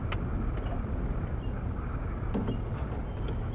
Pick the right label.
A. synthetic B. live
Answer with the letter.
B